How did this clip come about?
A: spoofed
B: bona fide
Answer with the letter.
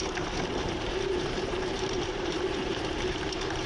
A